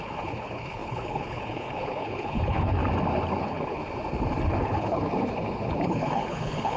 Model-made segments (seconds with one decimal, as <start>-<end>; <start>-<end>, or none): 0.0-2.8; 3.4-3.8; 4.5-6.8